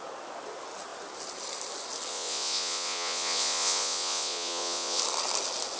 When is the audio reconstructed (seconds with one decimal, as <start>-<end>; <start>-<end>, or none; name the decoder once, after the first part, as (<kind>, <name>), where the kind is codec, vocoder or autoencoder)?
2.1-5.0 (vocoder, Vocos)